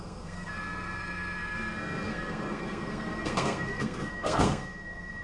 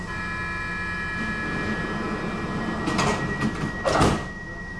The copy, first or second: first